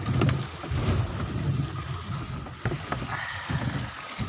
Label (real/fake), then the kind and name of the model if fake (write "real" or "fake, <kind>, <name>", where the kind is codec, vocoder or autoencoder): real